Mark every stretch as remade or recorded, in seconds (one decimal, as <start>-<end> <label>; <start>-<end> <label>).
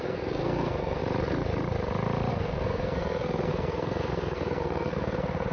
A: 0.0-1.0 remade; 1.0-2.3 recorded; 2.3-5.5 remade